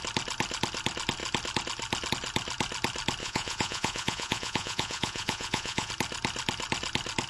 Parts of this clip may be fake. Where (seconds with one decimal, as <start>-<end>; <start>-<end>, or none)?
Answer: 3.2-5.9